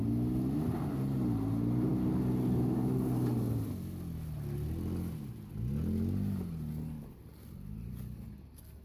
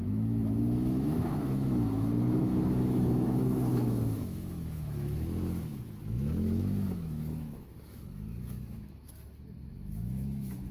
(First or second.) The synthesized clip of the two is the second